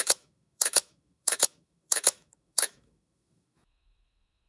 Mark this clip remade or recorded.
remade